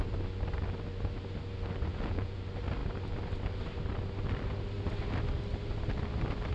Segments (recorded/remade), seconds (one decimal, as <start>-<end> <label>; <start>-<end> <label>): 0.0-1.9 recorded; 1.9-2.4 remade; 2.4-6.5 recorded